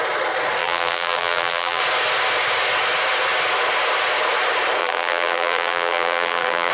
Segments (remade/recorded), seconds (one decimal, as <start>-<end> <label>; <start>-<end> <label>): 0.0-0.6 recorded; 0.6-1.8 remade; 1.8-4.8 recorded; 4.8-6.7 remade